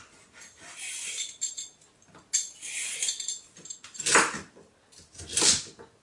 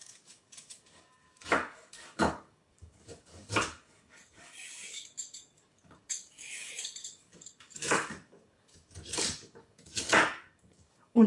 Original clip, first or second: first